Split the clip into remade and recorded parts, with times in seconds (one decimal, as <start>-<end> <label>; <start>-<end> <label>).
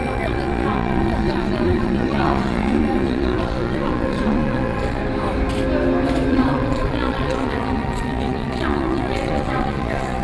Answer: 0.0-5.0 remade; 5.0-6.3 recorded; 6.3-10.2 remade